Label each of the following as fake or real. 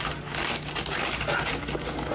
real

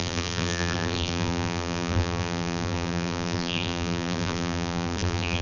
fake